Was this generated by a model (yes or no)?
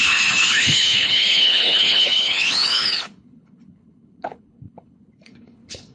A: yes